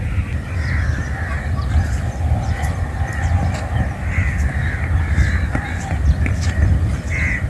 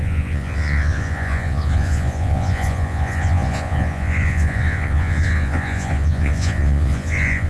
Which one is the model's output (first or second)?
second